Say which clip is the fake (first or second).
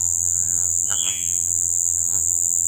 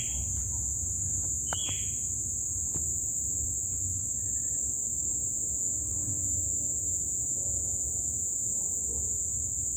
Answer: first